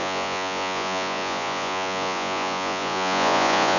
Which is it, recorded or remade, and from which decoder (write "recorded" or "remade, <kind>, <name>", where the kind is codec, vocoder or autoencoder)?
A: remade, vocoder, Vocos